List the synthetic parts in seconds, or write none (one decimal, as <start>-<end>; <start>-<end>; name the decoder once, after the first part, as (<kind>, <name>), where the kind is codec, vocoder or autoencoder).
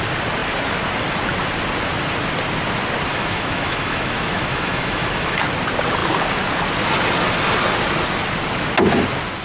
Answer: 3.1-5.4 (autoencoder, DAC-VAE)